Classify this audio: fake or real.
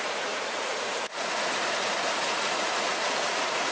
fake